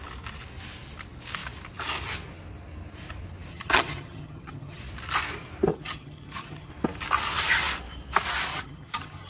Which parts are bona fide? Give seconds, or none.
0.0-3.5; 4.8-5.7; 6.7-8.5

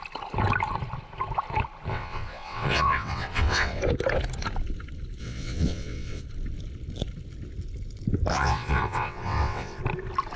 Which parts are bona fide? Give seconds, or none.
0.0-1.9; 3.8-5.2; 6.2-8.3; 9.8-10.4

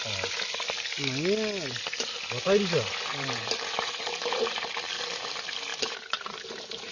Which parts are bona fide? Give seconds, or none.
0.0-3.1; 5.0-5.7

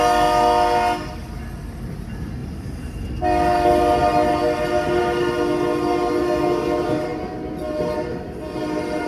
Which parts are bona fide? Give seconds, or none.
0.0-9.1

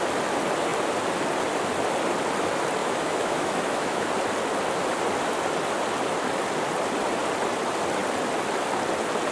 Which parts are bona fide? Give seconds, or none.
0.0-2.8; 4.1-9.3

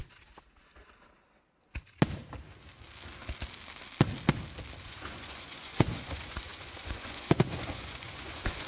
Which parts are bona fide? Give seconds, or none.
0.0-4.8